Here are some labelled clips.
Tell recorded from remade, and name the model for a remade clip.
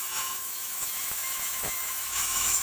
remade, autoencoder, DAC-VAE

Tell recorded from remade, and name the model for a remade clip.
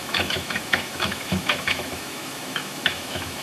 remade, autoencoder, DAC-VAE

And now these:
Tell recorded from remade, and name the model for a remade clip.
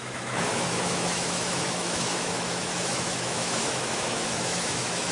remade, autoencoder, DAC-VAE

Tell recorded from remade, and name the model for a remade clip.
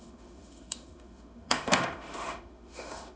remade, autoencoder, DAC-VAE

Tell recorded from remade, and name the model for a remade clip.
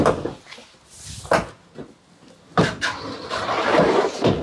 recorded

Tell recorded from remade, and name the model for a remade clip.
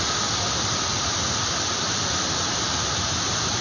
recorded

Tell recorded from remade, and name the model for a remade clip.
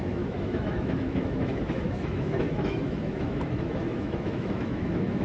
remade, autoencoder, DAC-VAE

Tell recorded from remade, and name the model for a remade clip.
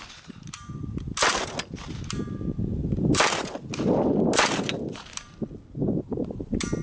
recorded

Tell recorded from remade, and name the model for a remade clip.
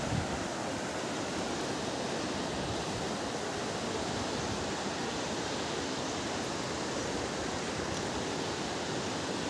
recorded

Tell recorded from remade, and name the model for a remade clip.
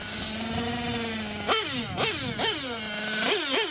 recorded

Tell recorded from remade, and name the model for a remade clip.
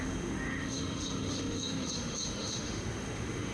remade, autoencoder, DAC-VAE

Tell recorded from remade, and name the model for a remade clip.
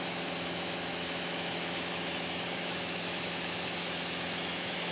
remade, autoencoder, DAC-VAE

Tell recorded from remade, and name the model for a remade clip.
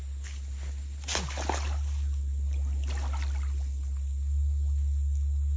recorded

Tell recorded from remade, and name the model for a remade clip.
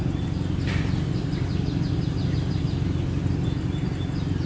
recorded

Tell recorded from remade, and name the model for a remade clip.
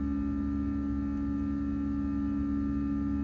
recorded